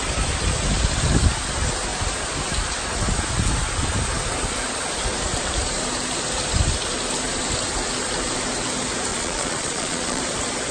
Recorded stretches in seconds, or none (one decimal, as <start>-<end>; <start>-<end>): 0.0-9.1; 10.2-10.7